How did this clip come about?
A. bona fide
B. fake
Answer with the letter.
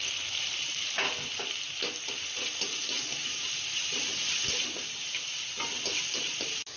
A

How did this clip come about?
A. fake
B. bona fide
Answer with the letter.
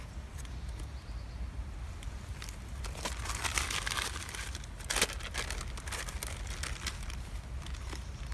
B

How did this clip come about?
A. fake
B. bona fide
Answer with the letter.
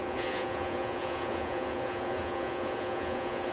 A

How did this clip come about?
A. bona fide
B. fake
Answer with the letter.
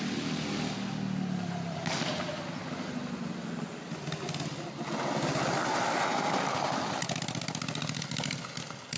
A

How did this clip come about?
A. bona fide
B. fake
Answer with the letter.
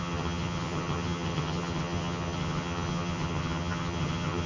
B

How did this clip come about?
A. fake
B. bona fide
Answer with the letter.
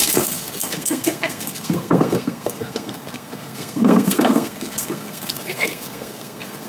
A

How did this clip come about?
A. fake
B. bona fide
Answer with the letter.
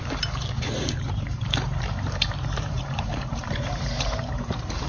A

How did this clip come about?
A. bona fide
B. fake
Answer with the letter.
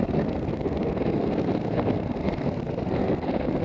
B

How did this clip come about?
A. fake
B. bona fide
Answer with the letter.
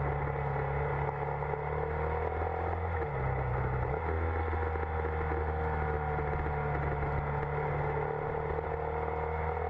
B